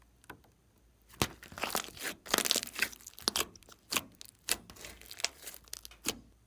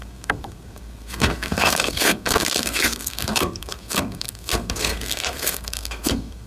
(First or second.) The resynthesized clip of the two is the second